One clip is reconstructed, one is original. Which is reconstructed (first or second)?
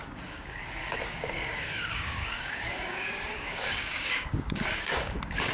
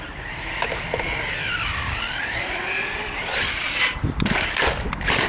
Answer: first